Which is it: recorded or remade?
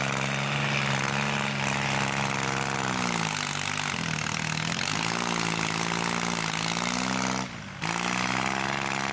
recorded